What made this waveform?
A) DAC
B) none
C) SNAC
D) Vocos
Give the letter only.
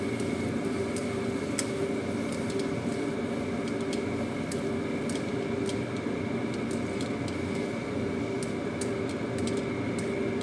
B